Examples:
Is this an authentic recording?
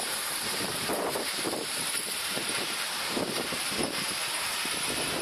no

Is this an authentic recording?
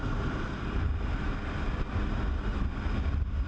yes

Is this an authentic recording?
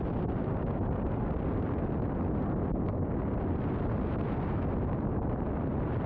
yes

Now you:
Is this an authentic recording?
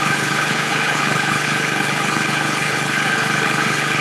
no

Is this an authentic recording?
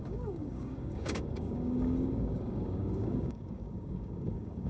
no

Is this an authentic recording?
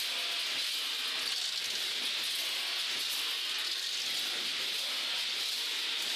yes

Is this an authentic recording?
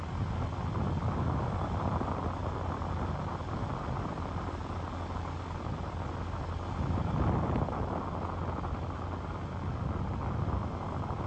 yes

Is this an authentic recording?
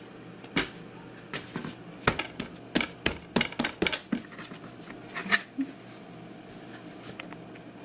yes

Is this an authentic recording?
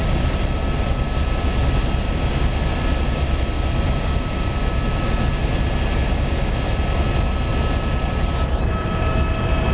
yes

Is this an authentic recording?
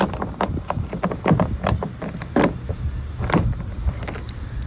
yes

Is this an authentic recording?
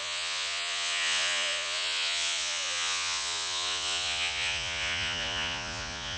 no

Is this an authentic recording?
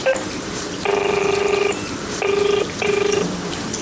no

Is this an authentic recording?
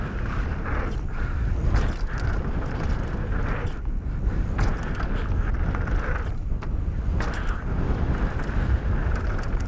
yes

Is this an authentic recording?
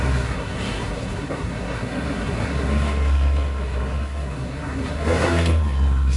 no